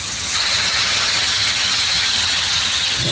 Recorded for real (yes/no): no